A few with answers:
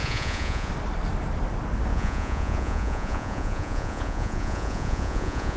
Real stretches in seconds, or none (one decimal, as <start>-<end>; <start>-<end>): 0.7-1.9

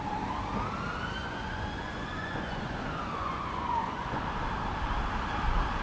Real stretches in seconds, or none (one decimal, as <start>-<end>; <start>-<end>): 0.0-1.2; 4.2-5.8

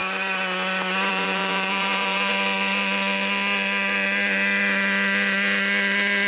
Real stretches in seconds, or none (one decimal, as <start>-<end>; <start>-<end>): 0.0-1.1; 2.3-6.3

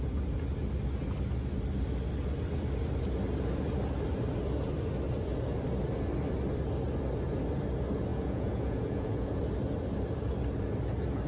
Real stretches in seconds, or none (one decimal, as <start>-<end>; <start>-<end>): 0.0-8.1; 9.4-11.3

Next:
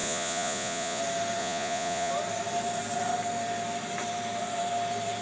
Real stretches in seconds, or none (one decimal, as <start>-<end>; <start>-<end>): 1.0-1.4; 2.1-5.2

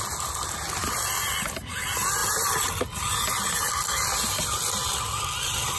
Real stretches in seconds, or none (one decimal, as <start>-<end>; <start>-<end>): 0.0-5.8

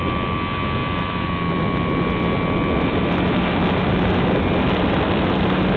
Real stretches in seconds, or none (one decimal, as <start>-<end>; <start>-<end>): 0.0-5.8